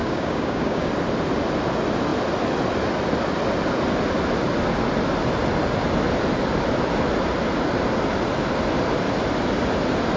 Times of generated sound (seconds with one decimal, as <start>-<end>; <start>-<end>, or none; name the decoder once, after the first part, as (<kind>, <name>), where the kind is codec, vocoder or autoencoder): 0.0-0.9 (codec, DAC)